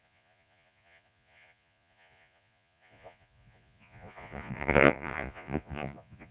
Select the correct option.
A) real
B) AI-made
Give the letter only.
B